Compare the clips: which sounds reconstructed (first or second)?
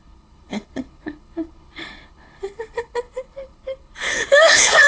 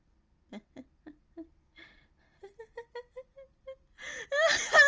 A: first